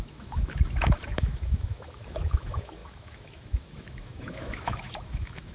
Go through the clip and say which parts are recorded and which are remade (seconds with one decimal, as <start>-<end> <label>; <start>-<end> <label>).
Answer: 0.0-5.5 remade